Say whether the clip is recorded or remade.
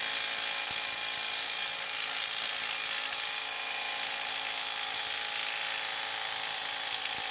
recorded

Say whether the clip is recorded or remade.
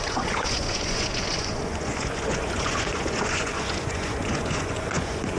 remade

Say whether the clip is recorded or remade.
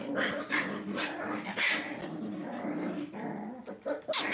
recorded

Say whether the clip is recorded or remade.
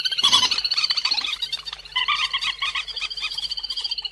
remade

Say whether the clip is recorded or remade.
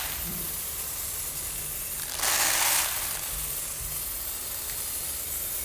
recorded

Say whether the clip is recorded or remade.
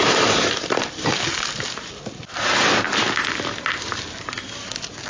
recorded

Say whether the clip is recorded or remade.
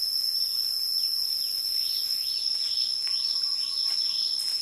recorded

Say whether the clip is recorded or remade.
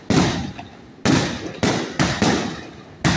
recorded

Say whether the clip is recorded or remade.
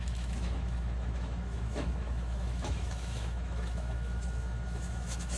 remade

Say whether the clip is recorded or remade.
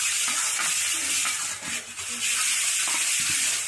recorded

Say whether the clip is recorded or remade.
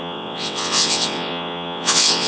remade